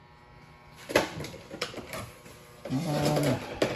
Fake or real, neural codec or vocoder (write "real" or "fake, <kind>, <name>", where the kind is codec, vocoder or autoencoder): real